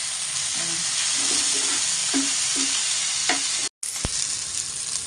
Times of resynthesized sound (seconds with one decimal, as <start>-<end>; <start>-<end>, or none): 2.0-2.5